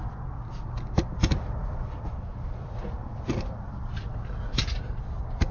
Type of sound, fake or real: real